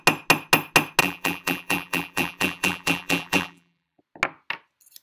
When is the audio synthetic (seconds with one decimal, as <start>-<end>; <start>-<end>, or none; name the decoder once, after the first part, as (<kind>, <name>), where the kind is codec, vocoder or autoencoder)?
1.0-4.0 (vocoder, BigVGAN v2)